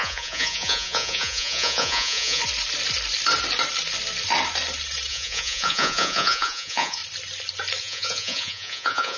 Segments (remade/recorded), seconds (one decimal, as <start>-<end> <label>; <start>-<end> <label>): 0.0-2.4 remade; 2.4-5.1 recorded; 5.1-7.0 remade; 7.0-7.8 recorded; 7.8-9.2 remade